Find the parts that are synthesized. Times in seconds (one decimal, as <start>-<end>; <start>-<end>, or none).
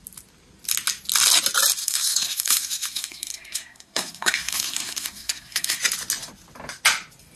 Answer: 1.8-5.8